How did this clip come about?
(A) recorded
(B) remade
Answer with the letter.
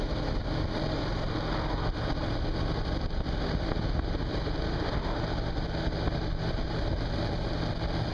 A